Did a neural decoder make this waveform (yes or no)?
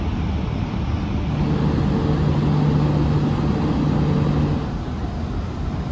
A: no